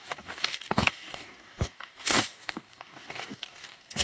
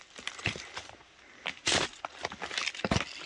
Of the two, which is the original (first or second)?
second